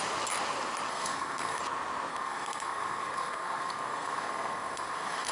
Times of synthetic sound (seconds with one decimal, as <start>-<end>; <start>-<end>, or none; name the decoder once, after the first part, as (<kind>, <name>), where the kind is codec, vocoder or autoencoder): 0.9-1.6 (codec, SNAC); 2.1-5.3